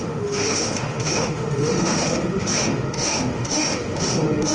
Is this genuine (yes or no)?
no